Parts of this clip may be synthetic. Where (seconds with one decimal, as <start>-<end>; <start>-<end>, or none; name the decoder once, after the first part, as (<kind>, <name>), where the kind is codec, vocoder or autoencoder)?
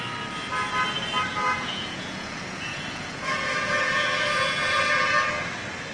1.3-4.8 (vocoder, Vocos)